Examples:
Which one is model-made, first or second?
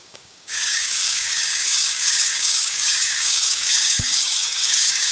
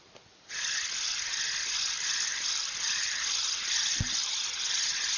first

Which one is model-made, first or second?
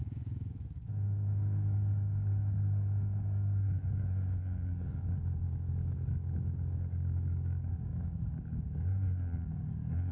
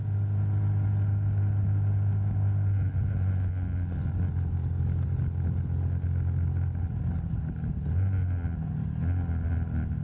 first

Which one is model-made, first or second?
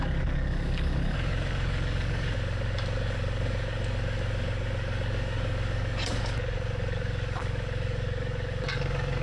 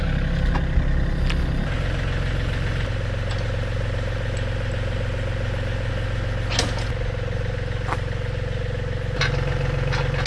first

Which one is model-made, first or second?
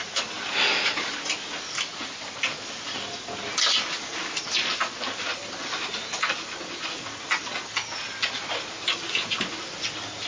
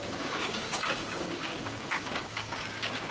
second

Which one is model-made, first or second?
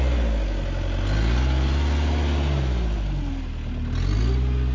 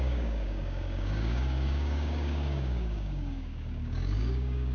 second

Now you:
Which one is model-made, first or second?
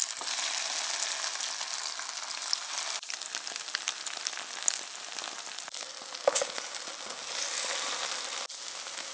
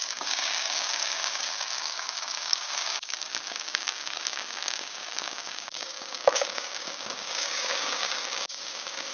second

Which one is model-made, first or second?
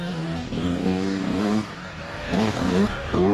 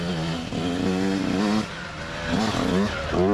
first